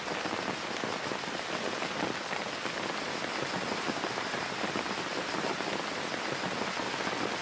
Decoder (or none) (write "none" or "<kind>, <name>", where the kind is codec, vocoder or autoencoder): none